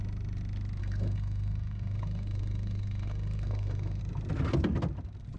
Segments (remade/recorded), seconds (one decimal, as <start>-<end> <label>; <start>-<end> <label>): 0.0-0.8 recorded; 0.8-4.0 remade; 4.0-5.4 recorded